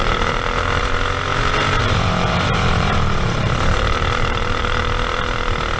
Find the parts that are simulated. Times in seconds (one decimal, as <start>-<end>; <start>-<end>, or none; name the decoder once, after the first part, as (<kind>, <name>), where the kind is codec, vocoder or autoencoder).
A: 0.0-0.8 (vocoder, BigVGAN v2); 1.3-4.8